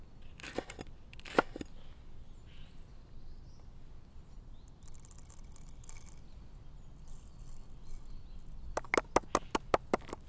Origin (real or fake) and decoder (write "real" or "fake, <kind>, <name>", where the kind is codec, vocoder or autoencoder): real